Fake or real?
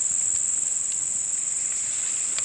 real